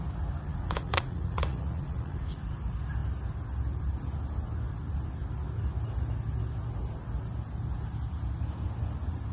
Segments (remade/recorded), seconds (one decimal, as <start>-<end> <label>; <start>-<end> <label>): 0.0-0.5 recorded; 0.5-2.4 remade; 2.4-9.3 recorded